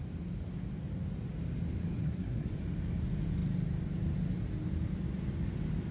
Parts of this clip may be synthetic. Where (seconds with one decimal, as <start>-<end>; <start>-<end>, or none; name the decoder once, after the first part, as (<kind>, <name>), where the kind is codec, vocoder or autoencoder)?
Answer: 2.0-2.5 (codec, SNAC)